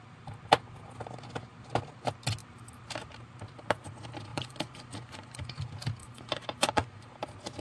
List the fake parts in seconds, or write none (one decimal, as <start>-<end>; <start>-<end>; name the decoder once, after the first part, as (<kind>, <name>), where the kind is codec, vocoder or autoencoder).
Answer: 4.3-5.6 (vocoder, Vocos); 6.0-7.1